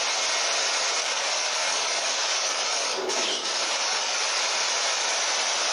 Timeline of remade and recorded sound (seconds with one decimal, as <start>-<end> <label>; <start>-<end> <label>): 0.0-1.0 recorded; 1.0-4.4 remade; 4.4-5.7 recorded